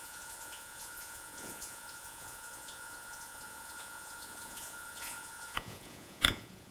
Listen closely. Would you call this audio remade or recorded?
remade